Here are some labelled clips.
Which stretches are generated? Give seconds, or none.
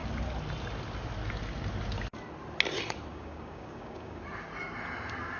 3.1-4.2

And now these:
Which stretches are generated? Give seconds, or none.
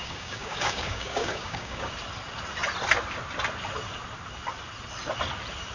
0.0-1.9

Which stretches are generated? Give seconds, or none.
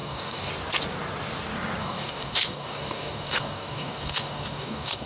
0.0-0.5; 1.8-5.1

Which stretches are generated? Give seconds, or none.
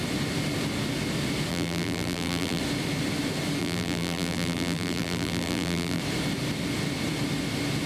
1.5-2.6; 3.6-6.0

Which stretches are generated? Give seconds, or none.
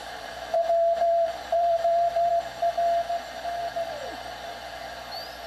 0.0-2.3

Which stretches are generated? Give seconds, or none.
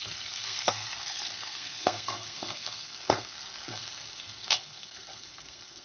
0.0-5.8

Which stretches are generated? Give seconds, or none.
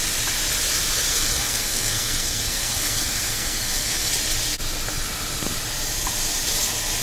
1.1-4.1